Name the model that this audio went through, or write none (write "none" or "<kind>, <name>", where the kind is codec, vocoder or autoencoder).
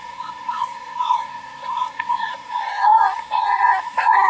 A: codec, SNAC